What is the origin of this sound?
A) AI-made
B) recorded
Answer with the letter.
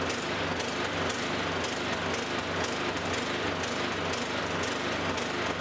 B